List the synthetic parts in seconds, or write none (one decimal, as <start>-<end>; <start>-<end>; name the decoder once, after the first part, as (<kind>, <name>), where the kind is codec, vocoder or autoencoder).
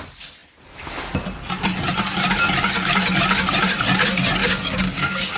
4.4-5.4 (codec, DAC)